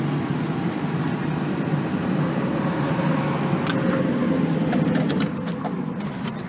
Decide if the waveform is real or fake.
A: real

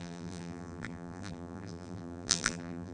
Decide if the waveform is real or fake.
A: fake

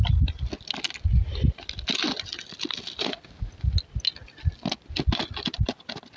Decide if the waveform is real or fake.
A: real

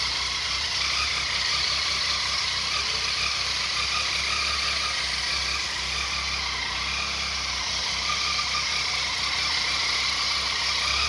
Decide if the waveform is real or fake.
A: real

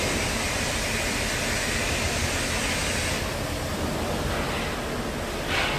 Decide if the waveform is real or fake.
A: real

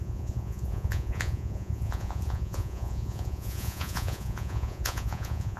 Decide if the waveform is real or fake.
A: fake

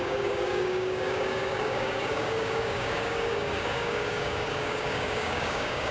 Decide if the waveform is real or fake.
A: fake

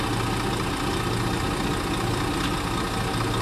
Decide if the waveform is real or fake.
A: real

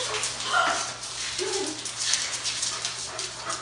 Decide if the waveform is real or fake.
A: real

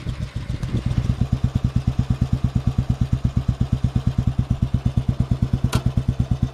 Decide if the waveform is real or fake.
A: real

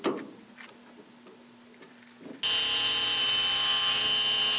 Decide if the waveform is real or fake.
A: real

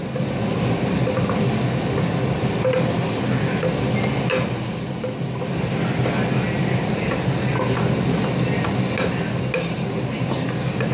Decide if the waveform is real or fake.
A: real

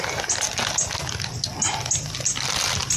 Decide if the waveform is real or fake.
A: real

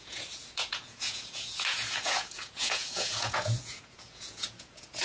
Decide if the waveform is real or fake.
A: fake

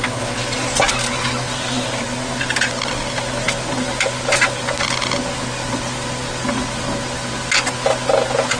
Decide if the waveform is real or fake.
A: real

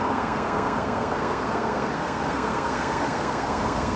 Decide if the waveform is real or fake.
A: fake